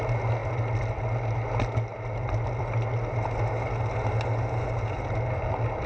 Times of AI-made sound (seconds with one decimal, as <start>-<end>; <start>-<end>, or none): none